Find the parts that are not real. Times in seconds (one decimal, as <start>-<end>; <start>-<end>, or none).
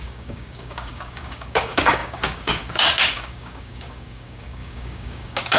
0.0-5.6